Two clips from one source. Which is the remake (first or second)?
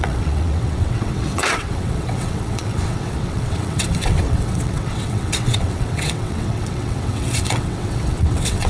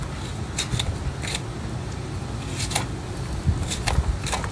first